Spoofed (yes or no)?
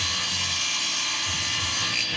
no